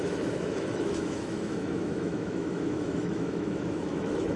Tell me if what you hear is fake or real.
fake